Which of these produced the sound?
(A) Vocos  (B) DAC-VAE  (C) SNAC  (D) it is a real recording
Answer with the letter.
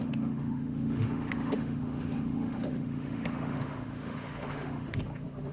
B